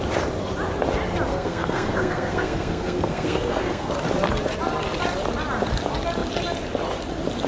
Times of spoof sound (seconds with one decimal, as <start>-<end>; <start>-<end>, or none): 1.3-3.9

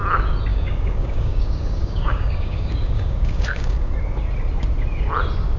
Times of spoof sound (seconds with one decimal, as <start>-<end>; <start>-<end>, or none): 0.5-3.9

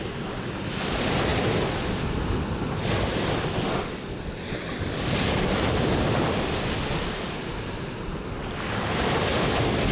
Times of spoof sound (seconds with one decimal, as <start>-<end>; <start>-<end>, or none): none

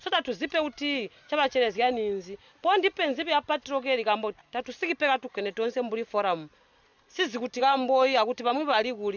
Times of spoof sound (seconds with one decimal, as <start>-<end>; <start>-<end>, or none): none

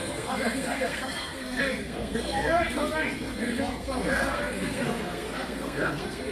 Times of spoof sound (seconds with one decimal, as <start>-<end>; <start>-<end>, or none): 0.0-6.3

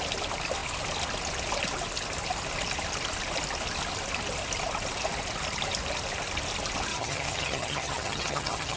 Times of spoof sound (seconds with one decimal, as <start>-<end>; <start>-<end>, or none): 6.9-8.8

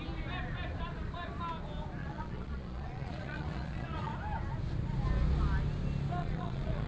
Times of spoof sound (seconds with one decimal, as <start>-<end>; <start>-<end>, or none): 2.0-4.1; 6.2-6.9

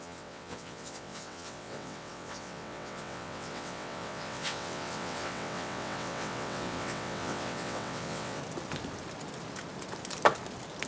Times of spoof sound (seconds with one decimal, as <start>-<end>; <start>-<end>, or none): 0.0-8.4